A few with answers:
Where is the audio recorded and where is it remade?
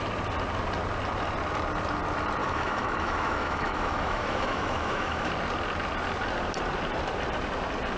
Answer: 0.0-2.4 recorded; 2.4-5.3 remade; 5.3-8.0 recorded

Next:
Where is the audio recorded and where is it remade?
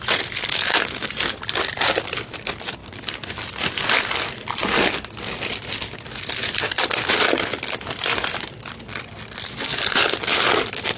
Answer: 0.0-0.5 recorded; 0.5-1.1 remade; 1.1-11.0 recorded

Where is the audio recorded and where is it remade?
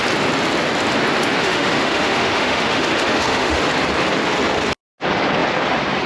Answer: 0.0-1.4 recorded; 1.4-3.6 remade; 3.6-6.1 recorded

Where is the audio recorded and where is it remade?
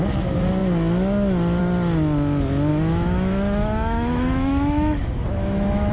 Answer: 0.0-2.7 recorded; 2.7-5.9 remade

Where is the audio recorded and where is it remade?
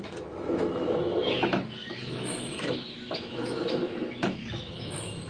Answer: 0.0-5.3 remade